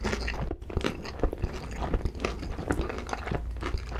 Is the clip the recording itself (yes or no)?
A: yes